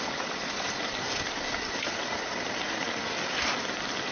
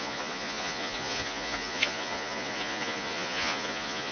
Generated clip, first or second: second